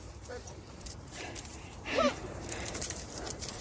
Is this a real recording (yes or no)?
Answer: no